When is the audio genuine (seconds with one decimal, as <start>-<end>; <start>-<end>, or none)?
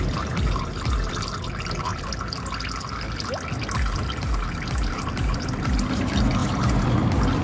1.9-4.9; 6.4-7.4